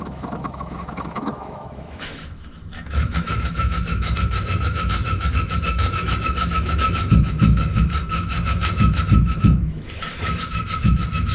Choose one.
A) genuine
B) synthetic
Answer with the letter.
B